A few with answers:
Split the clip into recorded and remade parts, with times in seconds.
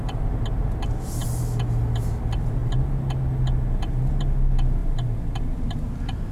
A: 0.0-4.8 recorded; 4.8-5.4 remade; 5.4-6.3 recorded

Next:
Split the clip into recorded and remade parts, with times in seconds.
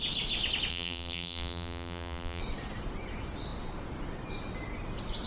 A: 0.0-0.7 recorded; 0.7-2.4 remade; 2.4-5.3 recorded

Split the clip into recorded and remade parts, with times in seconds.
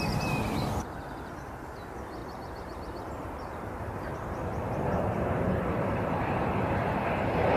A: 0.0-2.2 recorded; 2.2-6.6 remade; 6.6-7.6 recorded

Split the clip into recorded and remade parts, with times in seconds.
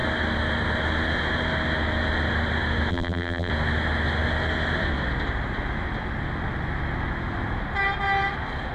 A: 0.0-2.9 recorded; 2.9-3.5 remade; 3.5-8.7 recorded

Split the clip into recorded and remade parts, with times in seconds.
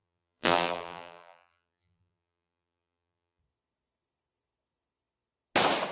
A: 0.0-3.4 remade; 3.4-5.9 recorded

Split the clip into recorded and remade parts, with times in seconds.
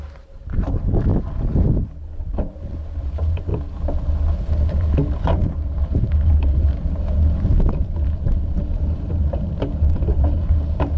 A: 0.0-1.1 remade; 1.1-3.0 recorded; 3.0-3.5 remade; 3.5-4.5 recorded; 4.5-11.0 remade